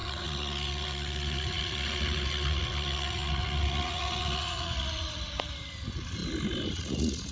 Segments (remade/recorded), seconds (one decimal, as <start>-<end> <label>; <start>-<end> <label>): 0.0-6.2 remade; 6.2-6.7 recorded; 6.7-7.3 remade